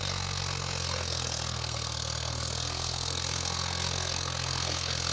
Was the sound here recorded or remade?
remade